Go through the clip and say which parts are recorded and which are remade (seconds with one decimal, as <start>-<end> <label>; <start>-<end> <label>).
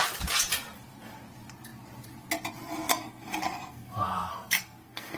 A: 0.0-2.9 recorded; 2.9-5.2 remade